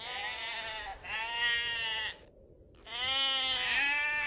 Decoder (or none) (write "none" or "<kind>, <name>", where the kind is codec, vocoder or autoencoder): none